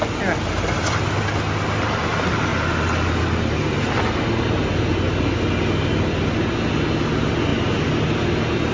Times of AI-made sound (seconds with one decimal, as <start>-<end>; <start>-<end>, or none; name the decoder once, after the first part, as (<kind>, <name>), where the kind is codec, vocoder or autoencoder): none